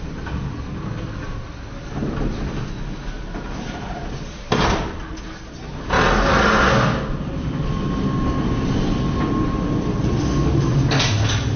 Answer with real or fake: real